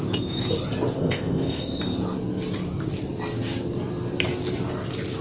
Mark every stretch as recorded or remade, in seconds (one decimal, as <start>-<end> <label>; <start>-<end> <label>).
0.0-1.0 recorded; 1.0-1.8 remade; 1.8-5.2 recorded